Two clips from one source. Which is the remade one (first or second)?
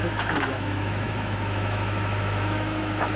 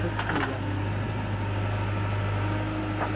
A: first